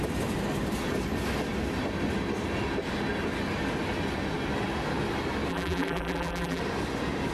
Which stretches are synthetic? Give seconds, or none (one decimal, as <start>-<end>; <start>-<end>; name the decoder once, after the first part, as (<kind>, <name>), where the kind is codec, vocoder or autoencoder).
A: 5.5-6.6 (vocoder, BigVGAN v2)